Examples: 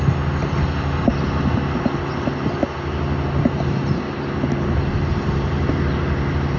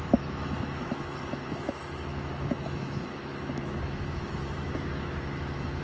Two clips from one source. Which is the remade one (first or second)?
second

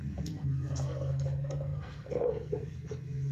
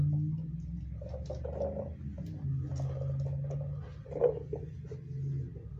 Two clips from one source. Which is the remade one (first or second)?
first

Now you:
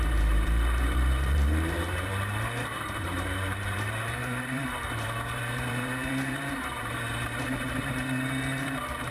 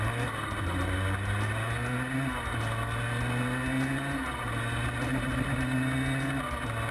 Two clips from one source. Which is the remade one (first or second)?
first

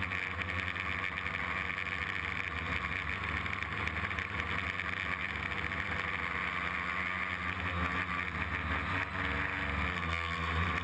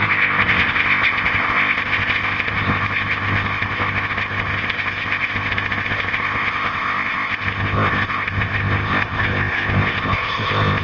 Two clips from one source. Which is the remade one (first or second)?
second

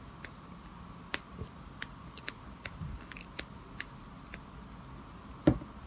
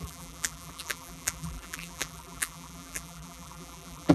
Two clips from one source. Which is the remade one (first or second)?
second